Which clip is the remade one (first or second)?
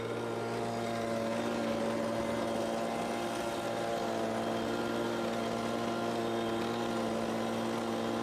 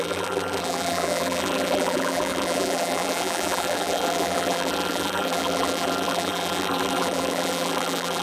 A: second